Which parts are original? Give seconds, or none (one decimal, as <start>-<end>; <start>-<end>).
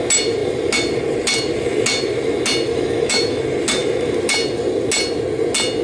0.0-2.7; 3.4-5.8